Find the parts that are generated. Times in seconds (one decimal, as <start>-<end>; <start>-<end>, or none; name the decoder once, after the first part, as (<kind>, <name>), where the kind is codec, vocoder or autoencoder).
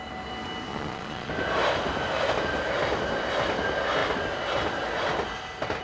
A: 0.7-1.3 (vocoder, Vocos)